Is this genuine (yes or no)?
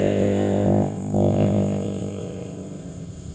no